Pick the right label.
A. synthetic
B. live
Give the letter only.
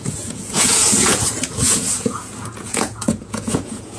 A